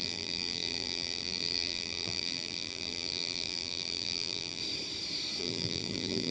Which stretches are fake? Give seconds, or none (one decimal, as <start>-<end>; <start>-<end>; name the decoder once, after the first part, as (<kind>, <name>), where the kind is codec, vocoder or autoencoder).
0.0-4.6 (vocoder, BigVGAN v2); 5.4-6.3